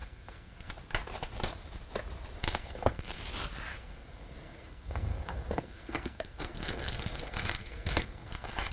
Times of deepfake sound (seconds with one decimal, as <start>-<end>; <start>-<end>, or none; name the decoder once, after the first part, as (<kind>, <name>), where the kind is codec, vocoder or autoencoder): 0.0-0.7 (codec, SNAC); 2.4-3.2; 3.7-8.7